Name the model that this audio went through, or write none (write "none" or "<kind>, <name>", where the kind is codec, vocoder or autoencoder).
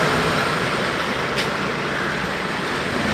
none